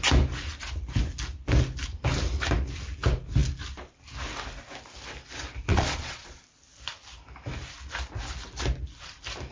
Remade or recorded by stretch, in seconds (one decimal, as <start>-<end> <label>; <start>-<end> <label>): 0.0-5.7 recorded; 5.7-6.4 remade; 6.4-9.5 recorded